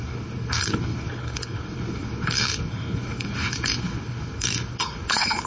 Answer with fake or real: fake